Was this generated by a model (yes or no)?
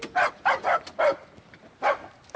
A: no